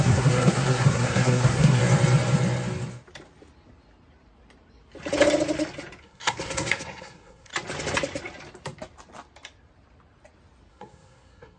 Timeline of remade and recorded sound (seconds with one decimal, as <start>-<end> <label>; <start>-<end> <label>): 0.0-1.8 remade; 1.8-6.0 recorded; 6.0-7.5 remade; 7.5-10.7 recorded; 10.7-11.6 remade